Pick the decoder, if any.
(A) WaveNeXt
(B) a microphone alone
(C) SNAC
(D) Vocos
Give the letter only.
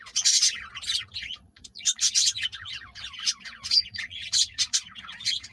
D